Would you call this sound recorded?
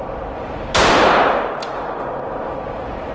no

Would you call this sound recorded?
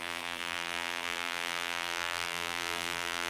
no